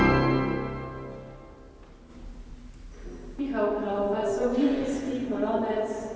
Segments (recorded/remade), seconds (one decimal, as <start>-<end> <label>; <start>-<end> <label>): 0.0-3.8 recorded; 3.8-5.8 remade; 5.8-6.2 recorded